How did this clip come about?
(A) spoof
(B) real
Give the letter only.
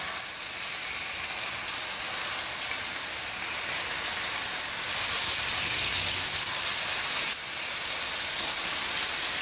B